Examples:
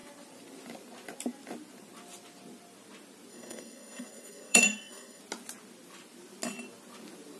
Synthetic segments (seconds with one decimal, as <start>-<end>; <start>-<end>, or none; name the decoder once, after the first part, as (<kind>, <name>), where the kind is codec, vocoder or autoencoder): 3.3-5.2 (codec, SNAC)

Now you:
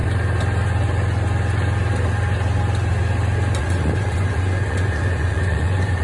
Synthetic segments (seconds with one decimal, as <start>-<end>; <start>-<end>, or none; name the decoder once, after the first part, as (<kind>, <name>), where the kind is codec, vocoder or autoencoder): 3.6-6.0 (vocoder, Vocos)

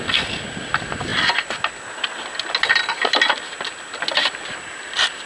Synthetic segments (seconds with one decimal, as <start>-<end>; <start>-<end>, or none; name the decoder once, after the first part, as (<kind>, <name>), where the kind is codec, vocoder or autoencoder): none

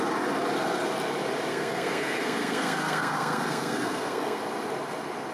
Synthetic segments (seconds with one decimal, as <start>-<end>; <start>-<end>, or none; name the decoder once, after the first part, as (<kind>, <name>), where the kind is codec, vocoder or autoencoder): 1.5-4.4 (codec, SNAC)

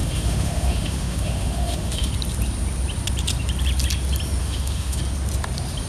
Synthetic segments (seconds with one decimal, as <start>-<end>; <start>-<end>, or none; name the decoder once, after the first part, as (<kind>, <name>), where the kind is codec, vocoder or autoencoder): 0.0-2.1 (autoencoder, DAC-VAE); 4.4-5.0

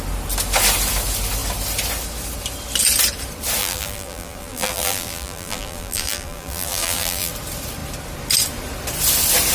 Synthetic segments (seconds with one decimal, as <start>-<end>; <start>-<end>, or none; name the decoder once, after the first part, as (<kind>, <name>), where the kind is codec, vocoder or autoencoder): 3.6-7.3 (vocoder, BigVGAN v2)

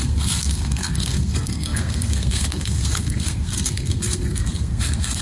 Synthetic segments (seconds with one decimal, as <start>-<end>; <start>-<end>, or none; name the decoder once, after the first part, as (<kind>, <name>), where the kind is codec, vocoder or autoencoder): 0.0-5.2 (codec, SNAC)